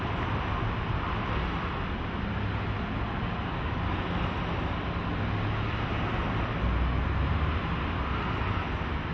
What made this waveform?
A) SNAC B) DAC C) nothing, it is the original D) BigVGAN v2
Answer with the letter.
C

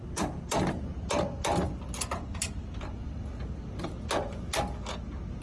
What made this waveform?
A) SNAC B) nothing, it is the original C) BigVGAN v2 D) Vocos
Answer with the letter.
B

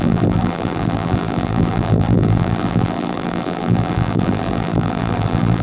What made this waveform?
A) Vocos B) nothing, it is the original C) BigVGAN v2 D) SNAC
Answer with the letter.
C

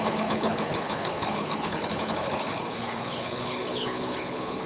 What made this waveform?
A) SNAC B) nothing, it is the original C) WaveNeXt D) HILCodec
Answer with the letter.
D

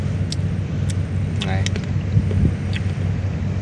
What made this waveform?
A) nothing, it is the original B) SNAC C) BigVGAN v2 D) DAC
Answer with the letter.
A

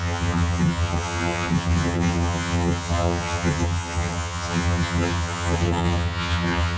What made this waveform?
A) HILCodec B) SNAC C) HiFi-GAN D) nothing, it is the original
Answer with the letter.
C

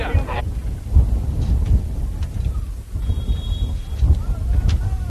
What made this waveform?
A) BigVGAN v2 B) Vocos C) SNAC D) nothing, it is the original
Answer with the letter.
D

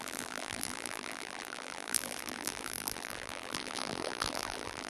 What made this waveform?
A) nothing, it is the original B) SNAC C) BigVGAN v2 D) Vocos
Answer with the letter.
C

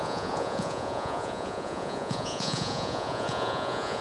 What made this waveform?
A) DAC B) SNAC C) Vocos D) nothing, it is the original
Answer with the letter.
C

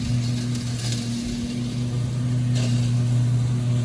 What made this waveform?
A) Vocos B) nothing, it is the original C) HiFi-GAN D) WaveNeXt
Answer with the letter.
B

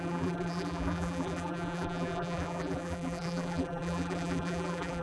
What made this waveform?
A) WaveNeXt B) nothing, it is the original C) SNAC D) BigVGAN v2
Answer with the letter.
D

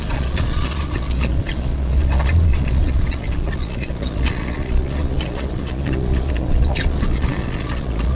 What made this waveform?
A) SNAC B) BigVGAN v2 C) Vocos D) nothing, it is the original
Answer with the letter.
C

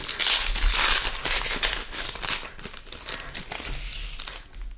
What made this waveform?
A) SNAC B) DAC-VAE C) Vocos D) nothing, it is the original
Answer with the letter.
D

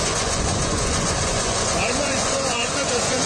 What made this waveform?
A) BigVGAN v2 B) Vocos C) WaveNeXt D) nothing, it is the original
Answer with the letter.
B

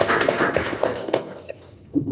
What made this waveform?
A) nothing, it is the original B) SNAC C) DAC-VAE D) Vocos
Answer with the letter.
B